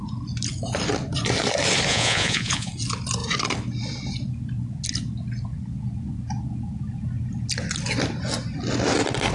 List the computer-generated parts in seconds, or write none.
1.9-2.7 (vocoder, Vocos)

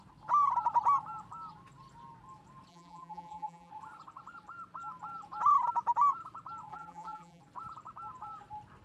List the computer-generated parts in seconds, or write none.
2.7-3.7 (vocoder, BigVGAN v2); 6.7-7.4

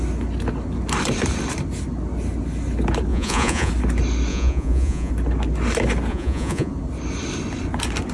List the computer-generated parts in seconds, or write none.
3.1-3.7 (vocoder, Vocos); 4.3-5.1; 6.1-6.7